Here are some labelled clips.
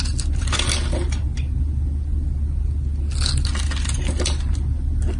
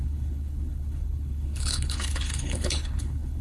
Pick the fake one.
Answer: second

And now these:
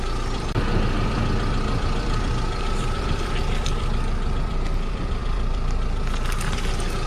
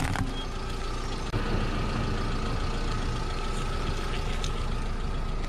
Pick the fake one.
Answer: first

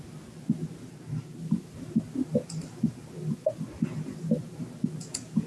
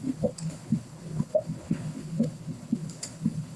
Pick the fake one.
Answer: second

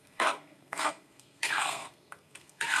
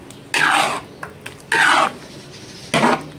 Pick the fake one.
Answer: first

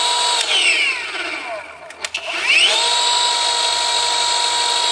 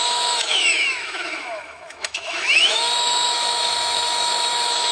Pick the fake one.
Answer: second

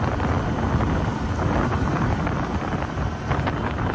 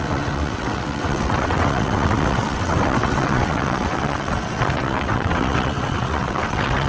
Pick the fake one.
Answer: second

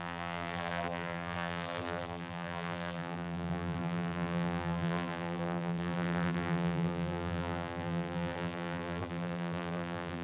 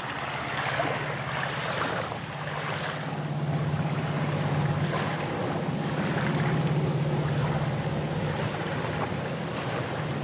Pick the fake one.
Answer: first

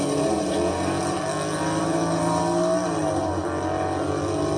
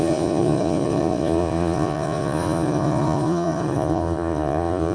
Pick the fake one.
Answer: second